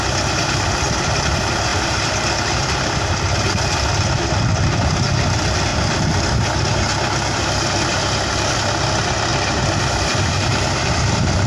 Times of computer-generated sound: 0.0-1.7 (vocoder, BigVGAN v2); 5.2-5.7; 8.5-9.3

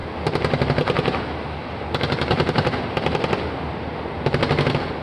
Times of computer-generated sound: none

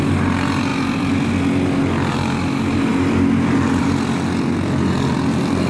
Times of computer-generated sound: none

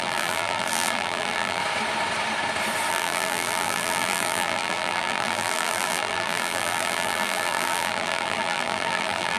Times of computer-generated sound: 0.0-1.6 (vocoder, BigVGAN v2); 2.9-9.4

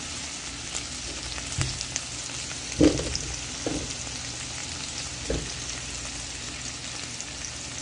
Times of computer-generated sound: 4.6-5.3 (vocoder, BigVGAN v2)

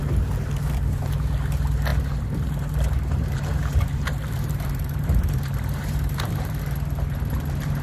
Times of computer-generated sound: 1.9-6.6 (vocoder, BigVGAN v2)